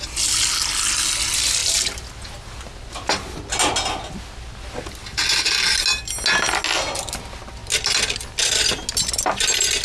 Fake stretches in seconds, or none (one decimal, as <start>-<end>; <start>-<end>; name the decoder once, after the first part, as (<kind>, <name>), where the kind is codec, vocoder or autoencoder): none